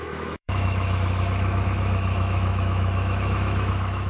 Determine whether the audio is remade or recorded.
remade